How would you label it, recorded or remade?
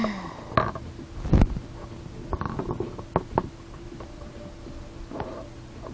recorded